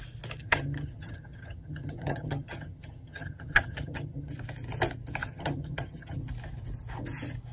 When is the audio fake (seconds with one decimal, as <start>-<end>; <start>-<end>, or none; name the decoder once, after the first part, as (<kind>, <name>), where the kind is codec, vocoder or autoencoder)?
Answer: 0.4-4.3 (vocoder, HiFi-GAN); 5.2-6.2